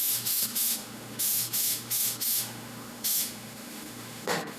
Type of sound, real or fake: fake